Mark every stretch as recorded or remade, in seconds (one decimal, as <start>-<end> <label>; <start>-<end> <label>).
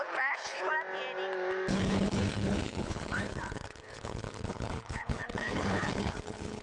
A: 0.0-0.7 remade; 0.7-1.7 recorded; 1.7-6.6 remade